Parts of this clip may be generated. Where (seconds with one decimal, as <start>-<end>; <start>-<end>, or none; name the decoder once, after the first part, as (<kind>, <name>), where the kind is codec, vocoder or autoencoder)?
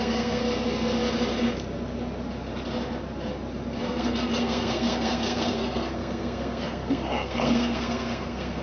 0.0-0.4 (codec, SNAC); 3.8-8.6